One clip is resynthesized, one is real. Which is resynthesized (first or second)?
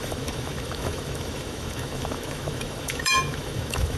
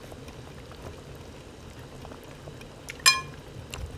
first